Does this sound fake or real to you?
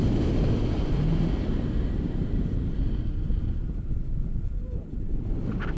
real